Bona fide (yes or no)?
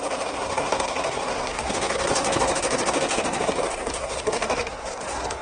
no